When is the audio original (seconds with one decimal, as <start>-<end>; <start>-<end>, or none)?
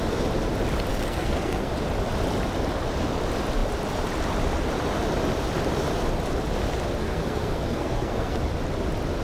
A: 0.0-0.9; 1.7-7.0; 8.4-9.2